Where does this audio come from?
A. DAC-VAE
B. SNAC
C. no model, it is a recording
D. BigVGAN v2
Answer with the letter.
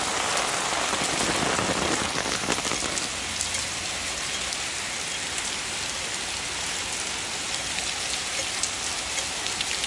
C